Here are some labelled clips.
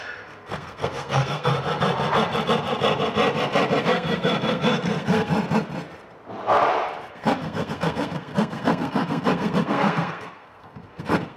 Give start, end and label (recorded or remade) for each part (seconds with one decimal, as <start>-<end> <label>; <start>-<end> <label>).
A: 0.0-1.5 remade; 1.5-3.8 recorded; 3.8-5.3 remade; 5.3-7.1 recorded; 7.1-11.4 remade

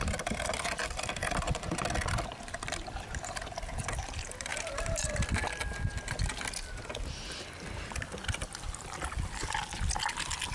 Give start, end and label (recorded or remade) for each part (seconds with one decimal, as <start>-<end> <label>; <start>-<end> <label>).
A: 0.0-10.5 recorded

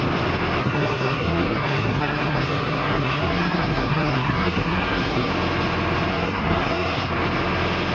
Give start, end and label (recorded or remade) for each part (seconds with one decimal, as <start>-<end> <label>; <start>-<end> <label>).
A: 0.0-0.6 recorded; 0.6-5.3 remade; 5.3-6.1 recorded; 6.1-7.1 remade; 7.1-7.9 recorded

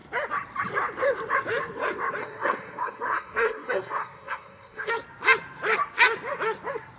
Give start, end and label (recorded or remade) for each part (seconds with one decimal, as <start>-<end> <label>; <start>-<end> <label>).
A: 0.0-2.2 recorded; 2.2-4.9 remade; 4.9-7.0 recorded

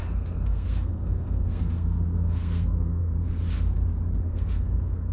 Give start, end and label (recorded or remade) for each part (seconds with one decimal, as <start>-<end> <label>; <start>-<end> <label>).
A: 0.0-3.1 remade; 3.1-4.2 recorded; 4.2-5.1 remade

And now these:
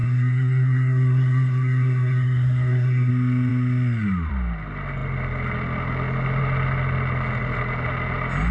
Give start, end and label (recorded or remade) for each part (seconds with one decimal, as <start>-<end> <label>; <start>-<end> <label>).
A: 0.0-3.1 remade; 3.1-8.5 recorded